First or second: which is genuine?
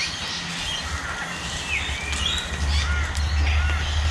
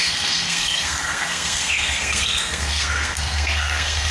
first